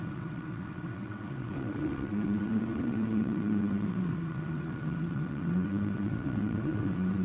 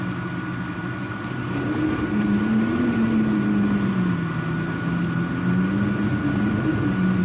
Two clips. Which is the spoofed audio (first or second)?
first